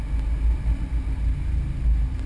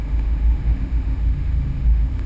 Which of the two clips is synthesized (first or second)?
second